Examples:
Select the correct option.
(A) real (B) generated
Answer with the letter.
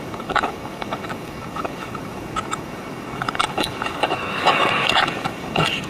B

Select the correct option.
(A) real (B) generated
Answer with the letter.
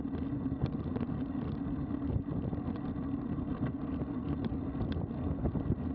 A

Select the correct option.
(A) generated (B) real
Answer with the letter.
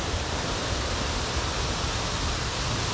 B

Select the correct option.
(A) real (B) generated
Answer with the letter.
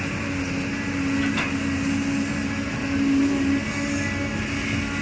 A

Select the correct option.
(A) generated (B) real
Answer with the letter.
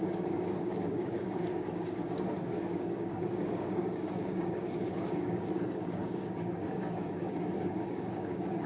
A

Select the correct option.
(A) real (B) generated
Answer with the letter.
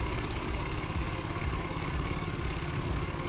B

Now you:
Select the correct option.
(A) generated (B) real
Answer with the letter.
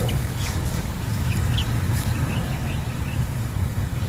A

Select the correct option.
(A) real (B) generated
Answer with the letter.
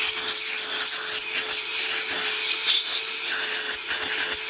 A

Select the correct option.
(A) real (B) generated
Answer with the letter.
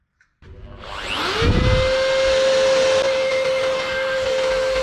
A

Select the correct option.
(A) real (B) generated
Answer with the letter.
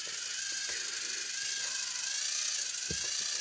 A